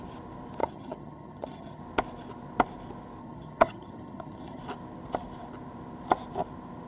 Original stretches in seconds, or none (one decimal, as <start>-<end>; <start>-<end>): 0.0-0.6; 1.8-3.2; 4.6-6.9